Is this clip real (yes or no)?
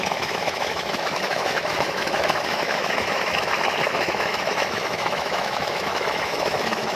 no